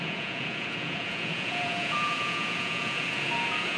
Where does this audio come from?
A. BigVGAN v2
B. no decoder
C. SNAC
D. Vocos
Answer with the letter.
D